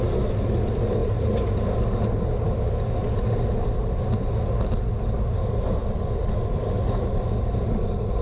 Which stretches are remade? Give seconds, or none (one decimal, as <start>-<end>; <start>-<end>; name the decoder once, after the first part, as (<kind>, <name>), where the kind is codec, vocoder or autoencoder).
none